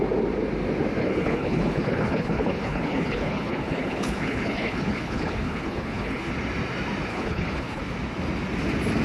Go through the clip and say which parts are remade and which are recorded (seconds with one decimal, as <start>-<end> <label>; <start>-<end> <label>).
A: 0.0-1.0 recorded; 1.0-6.3 remade; 6.3-7.1 recorded; 7.1-7.8 remade; 7.8-9.0 recorded